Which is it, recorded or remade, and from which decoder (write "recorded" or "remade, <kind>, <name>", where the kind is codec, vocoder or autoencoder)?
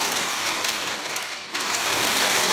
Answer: remade, codec, DAC